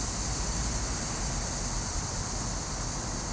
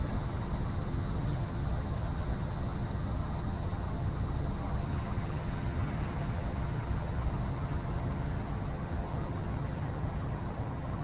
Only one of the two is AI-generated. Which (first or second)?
second